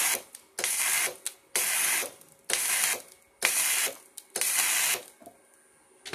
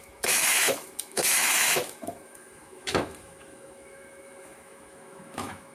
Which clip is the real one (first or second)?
first